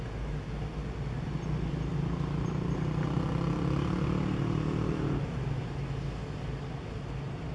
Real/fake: real